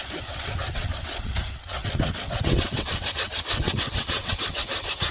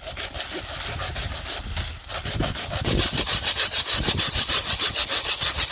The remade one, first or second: first